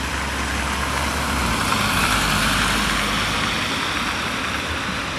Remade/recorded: recorded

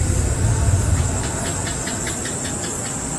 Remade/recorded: recorded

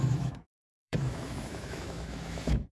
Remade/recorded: remade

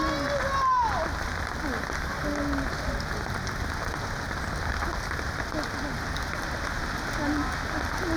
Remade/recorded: recorded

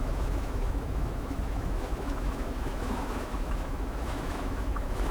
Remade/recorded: remade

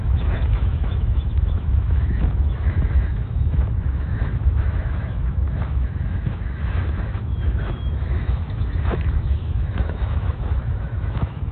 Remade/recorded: remade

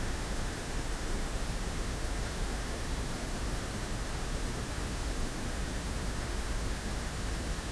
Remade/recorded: remade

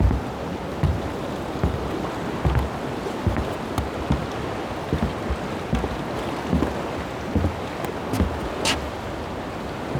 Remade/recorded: recorded